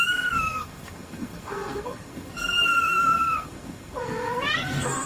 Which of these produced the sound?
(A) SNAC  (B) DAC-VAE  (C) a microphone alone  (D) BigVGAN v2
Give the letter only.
A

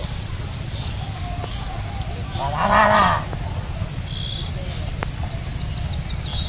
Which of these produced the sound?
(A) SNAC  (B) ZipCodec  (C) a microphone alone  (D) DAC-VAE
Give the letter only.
C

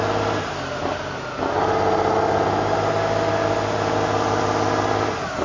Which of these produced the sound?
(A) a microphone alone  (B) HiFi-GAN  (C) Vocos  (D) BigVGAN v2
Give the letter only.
A